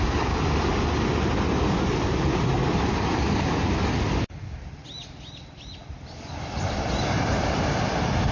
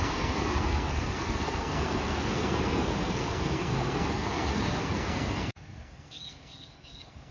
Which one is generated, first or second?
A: second